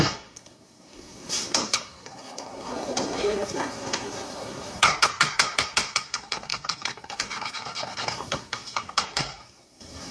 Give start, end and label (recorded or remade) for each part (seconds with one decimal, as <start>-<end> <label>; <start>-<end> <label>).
0.0-10.1 remade